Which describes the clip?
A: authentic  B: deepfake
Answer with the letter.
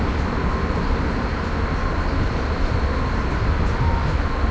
A